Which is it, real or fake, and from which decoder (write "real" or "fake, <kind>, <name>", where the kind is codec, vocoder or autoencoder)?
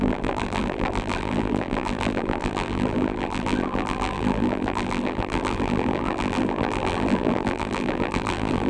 fake, vocoder, BigVGAN v2